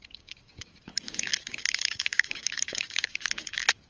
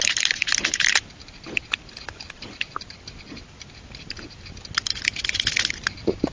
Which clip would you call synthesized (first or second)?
first